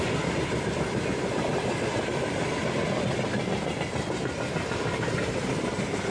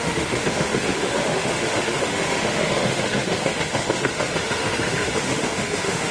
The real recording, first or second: first